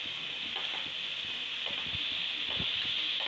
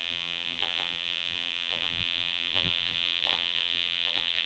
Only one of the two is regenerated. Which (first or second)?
second